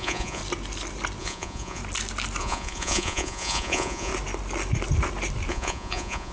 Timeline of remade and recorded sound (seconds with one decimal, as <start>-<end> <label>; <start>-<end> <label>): 0.0-0.4 remade; 0.4-1.2 recorded; 1.2-1.8 remade; 1.8-2.4 recorded; 2.4-4.1 remade; 4.1-5.5 recorded; 5.5-6.3 remade